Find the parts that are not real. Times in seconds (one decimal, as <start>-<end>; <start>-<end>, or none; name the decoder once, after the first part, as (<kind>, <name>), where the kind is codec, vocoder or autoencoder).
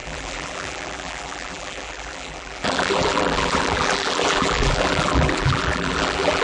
0.0-6.4 (vocoder, BigVGAN v2)